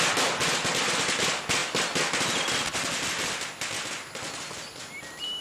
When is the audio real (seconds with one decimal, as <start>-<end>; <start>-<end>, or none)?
0.0-5.4